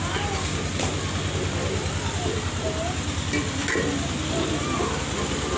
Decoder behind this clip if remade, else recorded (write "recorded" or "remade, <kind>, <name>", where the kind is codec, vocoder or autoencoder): recorded